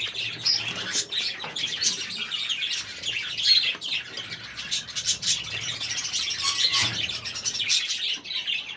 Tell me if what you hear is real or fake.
real